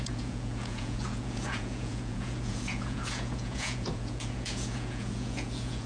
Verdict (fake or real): fake